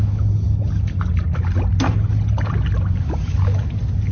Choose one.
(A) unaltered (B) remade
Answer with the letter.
A